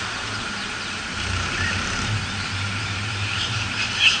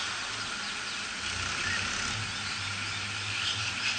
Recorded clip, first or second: second